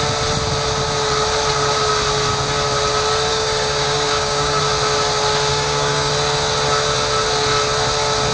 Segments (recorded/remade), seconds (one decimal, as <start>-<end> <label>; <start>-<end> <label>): 0.0-3.3 recorded; 3.3-4.6 remade; 4.6-5.5 recorded; 5.5-6.1 remade; 6.1-8.3 recorded

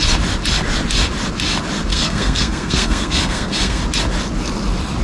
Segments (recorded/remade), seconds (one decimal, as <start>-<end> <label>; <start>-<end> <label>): 0.0-1.9 recorded; 1.9-3.8 remade; 3.8-5.0 recorded

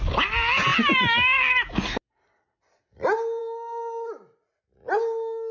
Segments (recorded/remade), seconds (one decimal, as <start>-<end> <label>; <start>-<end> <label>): 0.0-5.5 recorded

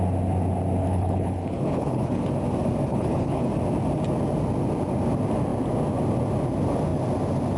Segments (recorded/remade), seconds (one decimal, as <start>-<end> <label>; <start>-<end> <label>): 0.0-0.8 recorded; 0.8-2.3 remade; 2.3-2.9 recorded; 2.9-3.5 remade; 3.5-7.6 recorded

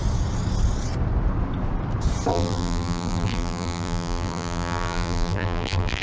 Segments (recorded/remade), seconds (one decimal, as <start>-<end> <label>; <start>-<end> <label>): 0.0-2.3 recorded; 2.3-6.0 remade